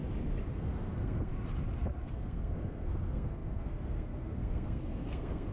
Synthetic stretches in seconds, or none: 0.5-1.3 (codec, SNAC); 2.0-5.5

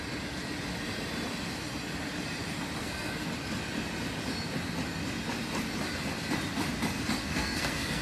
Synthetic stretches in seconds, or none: 2.8-3.3 (codec, SNAC); 7.2-8.0